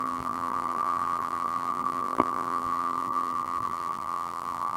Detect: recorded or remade remade